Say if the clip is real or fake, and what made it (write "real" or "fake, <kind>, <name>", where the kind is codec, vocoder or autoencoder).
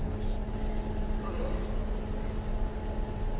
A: real